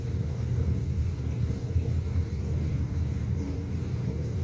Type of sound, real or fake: fake